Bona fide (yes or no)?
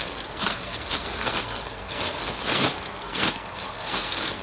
no